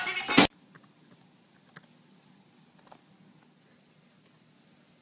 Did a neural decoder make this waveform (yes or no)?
no